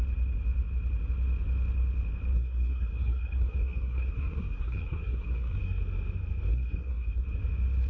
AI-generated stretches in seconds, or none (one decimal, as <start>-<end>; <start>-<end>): 2.3-5.8; 6.5-7.4